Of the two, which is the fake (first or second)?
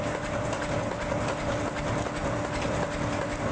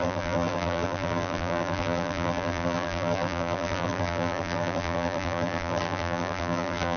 second